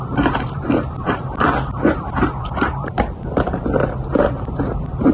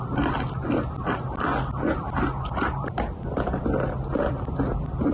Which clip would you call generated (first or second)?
first